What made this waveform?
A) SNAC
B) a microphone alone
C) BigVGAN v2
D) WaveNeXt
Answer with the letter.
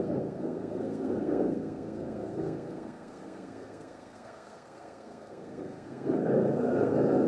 A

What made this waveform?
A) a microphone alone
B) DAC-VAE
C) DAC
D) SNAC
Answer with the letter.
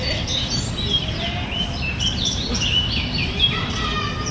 A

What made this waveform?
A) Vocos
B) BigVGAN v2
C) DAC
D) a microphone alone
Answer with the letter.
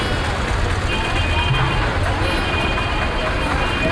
D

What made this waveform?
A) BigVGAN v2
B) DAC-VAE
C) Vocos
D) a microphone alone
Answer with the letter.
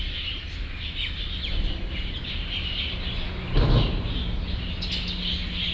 D